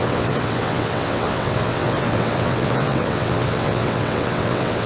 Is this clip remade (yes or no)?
yes